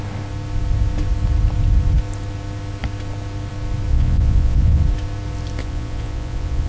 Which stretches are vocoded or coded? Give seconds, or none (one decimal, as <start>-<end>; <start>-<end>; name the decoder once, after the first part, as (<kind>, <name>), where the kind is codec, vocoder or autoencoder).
3.9-4.8 (vocoder, Vocos); 5.6-6.7